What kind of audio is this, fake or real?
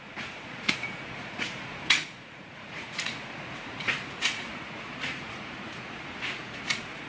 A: fake